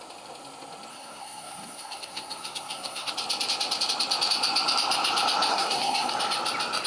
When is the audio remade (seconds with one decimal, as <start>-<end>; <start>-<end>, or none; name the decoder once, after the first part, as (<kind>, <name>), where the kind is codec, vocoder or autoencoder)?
0.9-3.1 (codec, SNAC); 5.5-6.1